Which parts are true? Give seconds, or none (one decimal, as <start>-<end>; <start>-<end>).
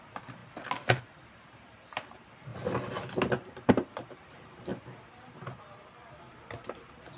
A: 0.4-1.0; 2.5-3.7; 4.7-6.2